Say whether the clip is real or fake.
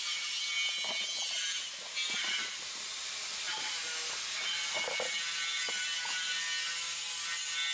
real